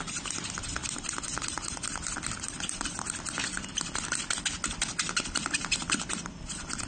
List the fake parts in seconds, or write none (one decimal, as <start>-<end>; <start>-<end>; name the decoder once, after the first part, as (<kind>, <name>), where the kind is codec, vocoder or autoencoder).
none